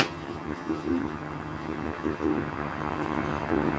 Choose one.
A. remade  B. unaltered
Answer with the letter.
A